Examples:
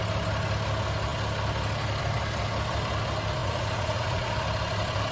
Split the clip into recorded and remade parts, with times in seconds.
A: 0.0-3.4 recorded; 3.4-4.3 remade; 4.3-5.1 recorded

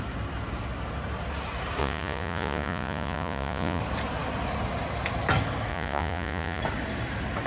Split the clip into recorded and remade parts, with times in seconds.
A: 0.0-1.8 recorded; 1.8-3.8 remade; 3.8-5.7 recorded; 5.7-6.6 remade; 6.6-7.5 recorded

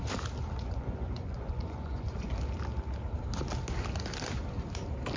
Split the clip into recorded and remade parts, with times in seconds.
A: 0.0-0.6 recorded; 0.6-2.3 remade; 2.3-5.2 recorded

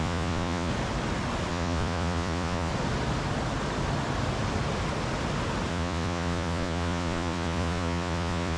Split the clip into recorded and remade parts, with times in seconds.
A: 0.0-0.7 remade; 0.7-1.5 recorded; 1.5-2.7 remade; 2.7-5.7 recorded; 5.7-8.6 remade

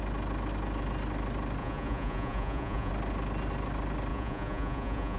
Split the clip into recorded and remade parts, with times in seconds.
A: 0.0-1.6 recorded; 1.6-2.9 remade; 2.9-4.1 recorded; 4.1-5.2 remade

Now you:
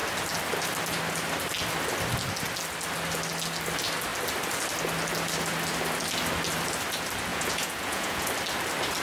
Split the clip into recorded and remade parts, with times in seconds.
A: 0.0-7.3 recorded; 7.3-8.3 remade; 8.3-9.0 recorded